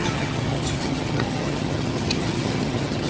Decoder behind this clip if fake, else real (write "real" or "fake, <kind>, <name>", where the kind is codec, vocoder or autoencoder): fake, vocoder, HiFi-GAN